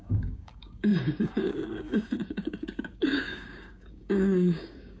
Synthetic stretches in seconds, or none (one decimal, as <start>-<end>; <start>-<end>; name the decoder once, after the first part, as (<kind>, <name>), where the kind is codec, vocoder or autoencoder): 0.0-5.0 (codec, DAC)